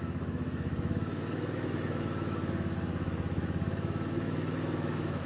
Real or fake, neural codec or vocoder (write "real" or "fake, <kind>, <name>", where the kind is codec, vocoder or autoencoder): fake, autoencoder, DAC-VAE